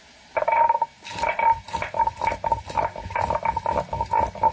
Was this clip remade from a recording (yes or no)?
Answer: no